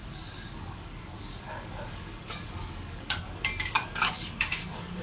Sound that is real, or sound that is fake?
fake